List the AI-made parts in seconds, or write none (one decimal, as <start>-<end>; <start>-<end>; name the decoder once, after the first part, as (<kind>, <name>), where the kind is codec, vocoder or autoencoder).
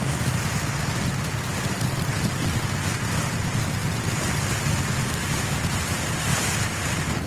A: none